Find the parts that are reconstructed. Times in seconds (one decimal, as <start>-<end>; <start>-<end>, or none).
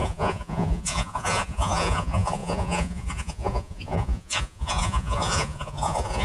0.0-6.2